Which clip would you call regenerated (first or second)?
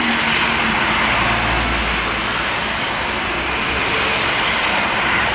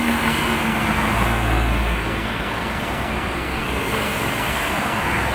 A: second